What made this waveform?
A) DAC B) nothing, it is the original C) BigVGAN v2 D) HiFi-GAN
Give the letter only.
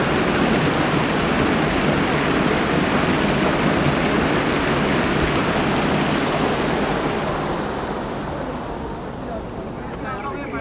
B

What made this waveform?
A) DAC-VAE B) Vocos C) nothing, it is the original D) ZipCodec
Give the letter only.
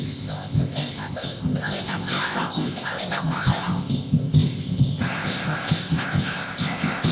D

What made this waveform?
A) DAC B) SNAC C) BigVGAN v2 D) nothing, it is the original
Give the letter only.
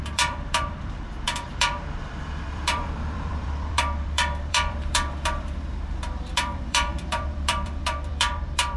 C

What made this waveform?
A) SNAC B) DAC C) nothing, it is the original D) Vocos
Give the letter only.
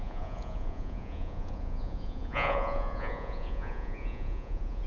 D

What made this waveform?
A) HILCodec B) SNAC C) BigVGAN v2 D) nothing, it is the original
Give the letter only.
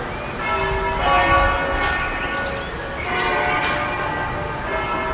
D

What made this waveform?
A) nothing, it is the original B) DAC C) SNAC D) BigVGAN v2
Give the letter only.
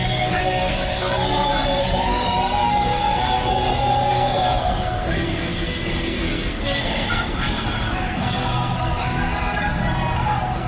C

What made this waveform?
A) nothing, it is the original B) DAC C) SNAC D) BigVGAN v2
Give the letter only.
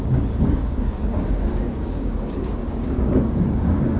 B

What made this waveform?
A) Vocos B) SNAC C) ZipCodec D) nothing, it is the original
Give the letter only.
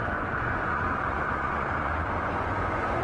A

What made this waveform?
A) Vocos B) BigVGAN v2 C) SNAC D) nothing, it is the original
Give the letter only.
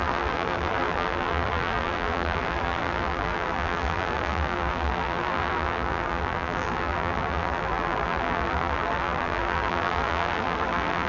B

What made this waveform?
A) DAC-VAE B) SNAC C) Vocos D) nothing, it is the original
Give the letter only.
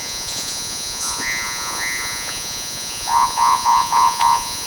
C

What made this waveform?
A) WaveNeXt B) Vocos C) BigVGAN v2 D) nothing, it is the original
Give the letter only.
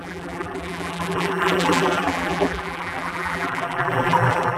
C